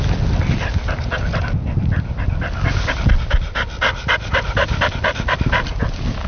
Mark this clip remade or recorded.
recorded